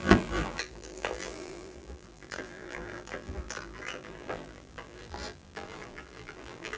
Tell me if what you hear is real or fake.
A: fake